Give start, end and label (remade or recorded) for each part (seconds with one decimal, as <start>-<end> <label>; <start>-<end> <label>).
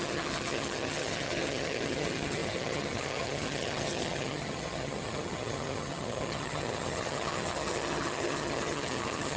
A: 0.0-9.4 remade